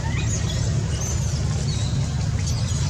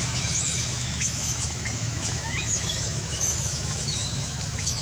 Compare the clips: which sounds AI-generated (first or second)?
second